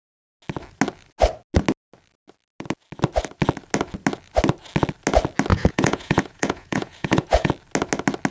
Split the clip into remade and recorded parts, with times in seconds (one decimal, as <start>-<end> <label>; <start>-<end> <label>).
0.0-5.5 recorded; 5.5-7.5 remade; 7.5-8.3 recorded